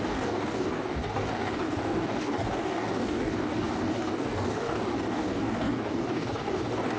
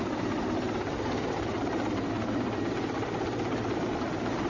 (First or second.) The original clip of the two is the second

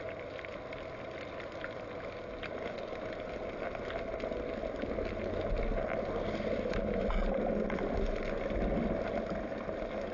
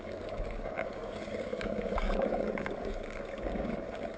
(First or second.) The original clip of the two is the first